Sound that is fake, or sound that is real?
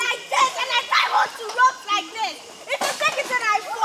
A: real